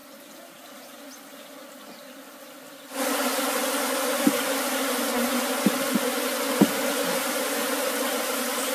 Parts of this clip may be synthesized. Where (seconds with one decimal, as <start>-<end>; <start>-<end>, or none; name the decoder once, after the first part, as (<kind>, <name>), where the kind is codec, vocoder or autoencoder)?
none